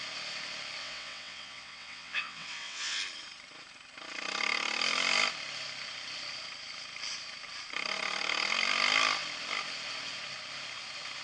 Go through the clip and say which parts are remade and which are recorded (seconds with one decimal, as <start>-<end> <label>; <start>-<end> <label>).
0.0-0.8 recorded; 0.8-3.0 remade; 3.0-11.2 recorded